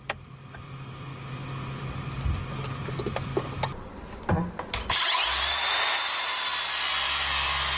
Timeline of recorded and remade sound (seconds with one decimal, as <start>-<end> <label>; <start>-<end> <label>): 0.0-1.1 remade; 1.1-2.8 recorded; 2.8-3.3 remade; 3.3-6.9 recorded; 6.9-7.8 remade

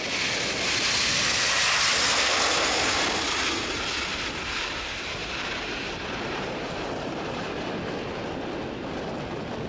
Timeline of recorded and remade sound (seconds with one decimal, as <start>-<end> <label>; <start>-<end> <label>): 0.0-5.2 recorded; 5.2-7.7 remade; 7.7-9.7 recorded

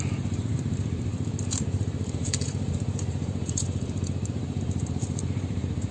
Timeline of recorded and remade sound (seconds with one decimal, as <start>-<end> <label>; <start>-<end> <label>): 0.0-5.9 remade